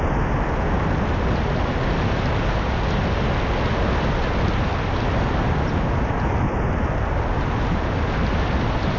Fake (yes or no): no